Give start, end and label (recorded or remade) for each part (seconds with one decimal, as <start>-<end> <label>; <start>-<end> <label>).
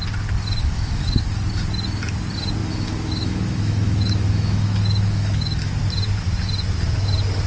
0.0-0.6 recorded; 0.6-1.2 remade; 1.2-2.6 recorded; 2.6-5.7 remade; 5.7-7.5 recorded